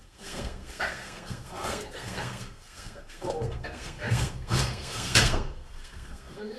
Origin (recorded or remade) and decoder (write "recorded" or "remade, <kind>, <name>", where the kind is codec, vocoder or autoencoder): remade, codec, SNAC